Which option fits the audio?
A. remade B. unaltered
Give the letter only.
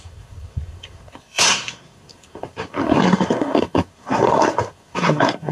A